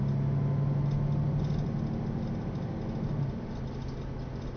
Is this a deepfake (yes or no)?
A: no